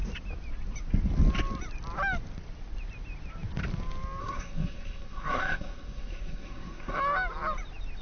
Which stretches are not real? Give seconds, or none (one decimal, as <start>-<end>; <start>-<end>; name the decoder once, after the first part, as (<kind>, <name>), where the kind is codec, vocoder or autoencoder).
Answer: 4.2-7.0 (codec, SNAC)